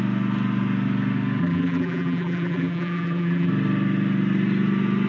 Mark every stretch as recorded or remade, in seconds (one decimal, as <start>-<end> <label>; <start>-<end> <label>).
0.0-1.4 recorded; 1.4-3.5 remade; 3.5-5.1 recorded